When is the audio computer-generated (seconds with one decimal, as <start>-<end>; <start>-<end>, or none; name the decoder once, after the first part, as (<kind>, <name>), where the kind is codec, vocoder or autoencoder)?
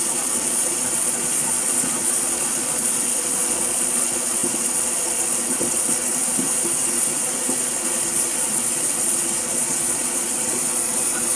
0.0-6.1 (vocoder, Vocos); 6.9-11.3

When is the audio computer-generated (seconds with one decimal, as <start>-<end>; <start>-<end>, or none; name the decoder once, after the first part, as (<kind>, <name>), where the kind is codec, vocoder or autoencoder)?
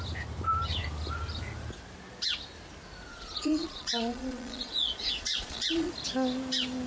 3.1-5.9 (vocoder, Vocos)